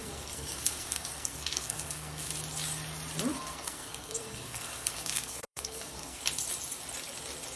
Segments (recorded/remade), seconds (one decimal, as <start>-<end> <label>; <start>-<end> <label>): 0.0-2.3 remade; 2.3-3.3 recorded; 3.3-6.2 remade; 6.2-7.6 recorded